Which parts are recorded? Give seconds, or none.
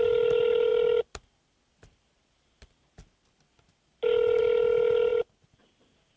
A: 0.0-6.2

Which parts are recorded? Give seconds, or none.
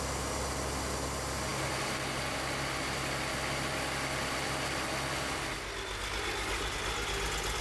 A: 0.0-7.6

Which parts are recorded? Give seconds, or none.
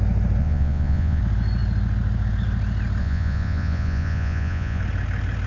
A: 0.0-0.4; 1.2-3.0; 4.8-5.5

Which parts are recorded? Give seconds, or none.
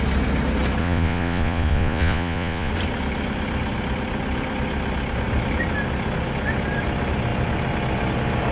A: 0.0-0.8; 2.7-8.5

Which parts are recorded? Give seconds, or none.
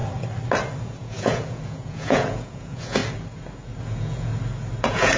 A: 0.0-0.8; 3.0-3.8; 4.3-4.8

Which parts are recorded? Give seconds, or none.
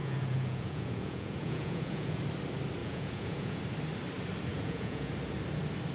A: 2.2-2.8; 3.6-4.5; 5.1-5.9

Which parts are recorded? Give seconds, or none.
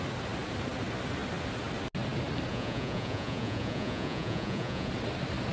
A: 0.0-2.5; 4.9-5.5